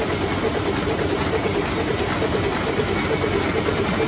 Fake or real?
real